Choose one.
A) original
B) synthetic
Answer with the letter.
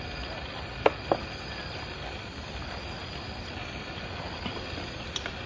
A